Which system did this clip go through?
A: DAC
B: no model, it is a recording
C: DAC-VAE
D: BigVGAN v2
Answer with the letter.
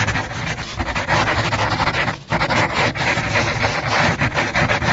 B